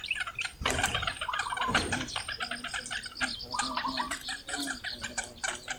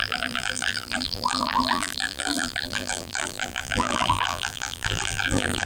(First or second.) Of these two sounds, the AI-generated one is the second